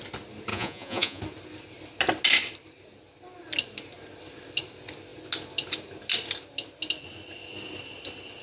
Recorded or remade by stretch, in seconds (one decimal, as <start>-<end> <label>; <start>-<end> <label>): 0.0-0.5 recorded; 0.5-1.2 remade; 1.2-8.4 recorded

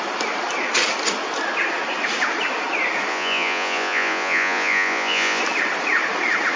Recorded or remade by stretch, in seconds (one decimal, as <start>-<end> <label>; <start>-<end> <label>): 0.0-3.1 recorded; 3.1-5.4 remade; 5.4-6.6 recorded

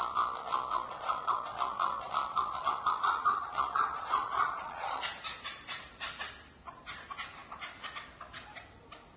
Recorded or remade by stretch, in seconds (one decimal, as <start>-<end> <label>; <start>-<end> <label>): 0.0-5.0 remade; 5.0-9.2 recorded

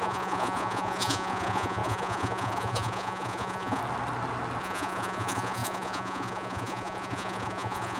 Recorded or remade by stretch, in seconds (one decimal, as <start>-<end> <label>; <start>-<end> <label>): 0.0-3.8 remade; 3.8-4.6 recorded; 4.6-8.0 remade